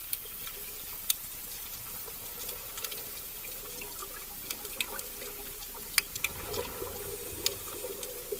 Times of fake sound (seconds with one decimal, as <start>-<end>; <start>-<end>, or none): 0.0-2.2; 4.0-5.6